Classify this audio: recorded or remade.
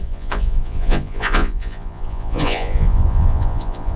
remade